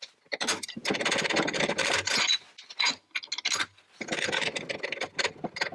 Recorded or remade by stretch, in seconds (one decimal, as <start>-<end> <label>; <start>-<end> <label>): 0.0-5.7 recorded